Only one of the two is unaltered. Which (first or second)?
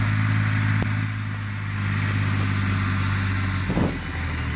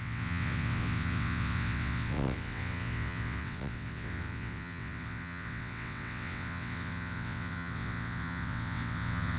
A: first